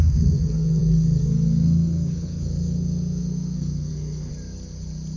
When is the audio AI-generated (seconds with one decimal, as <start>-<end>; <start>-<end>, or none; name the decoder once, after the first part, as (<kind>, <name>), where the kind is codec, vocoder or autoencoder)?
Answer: 0.0-4.3 (codec, SNAC)

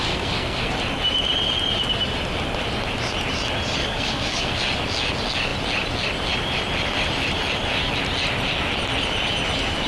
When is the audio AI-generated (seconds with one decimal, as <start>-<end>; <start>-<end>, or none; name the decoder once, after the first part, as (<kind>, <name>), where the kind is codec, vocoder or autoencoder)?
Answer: 0.0-0.7 (codec, SNAC); 3.8-4.6

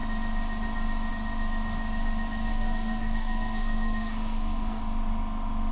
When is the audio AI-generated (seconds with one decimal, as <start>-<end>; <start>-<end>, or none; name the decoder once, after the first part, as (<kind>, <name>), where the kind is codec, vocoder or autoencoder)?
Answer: 2.5-4.8 (codec, SNAC)

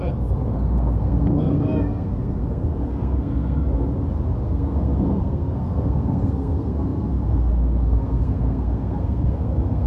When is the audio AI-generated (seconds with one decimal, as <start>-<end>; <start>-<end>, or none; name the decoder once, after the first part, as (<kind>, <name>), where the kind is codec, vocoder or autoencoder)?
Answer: 0.0-3.6 (codec, SNAC); 4.4-9.9

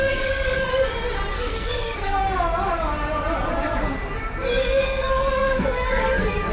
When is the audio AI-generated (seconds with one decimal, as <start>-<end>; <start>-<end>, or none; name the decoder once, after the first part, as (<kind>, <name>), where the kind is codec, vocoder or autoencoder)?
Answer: 0.0-0.7 (codec, SNAC); 1.3-2.2; 4.6-6.5

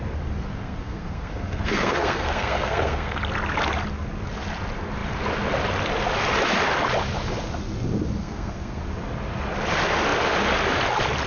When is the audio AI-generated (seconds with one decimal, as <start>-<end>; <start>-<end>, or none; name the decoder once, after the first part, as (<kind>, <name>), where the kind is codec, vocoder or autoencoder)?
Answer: 0.5-3.2 (codec, SNAC); 8.2-8.8

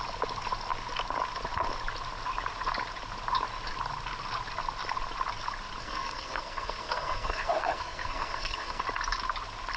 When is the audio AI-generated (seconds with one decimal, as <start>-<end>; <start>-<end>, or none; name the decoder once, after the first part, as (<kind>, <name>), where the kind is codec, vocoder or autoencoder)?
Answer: 5.8-8.8 (codec, SNAC)